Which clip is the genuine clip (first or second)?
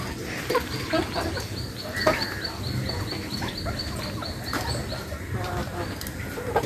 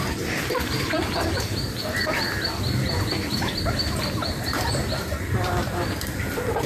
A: first